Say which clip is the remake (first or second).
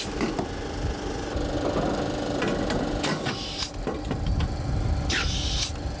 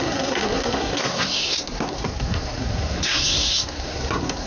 second